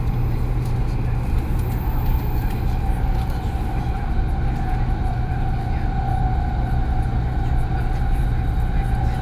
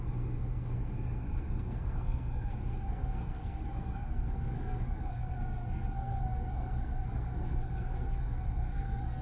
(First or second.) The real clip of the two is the first